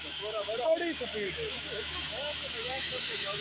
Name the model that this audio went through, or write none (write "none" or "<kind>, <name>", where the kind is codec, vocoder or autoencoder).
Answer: autoencoder, DAC-VAE